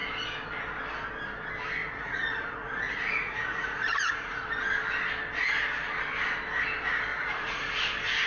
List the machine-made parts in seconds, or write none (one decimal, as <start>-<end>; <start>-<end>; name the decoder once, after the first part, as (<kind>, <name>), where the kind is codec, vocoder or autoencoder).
1.8-4.4 (vocoder, Vocos); 7.1-7.8